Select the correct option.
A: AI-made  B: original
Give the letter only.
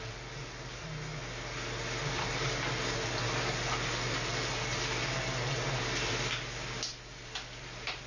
B